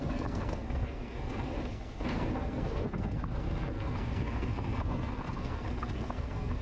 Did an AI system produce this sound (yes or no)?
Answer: yes